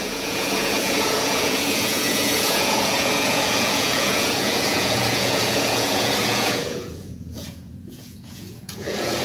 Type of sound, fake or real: fake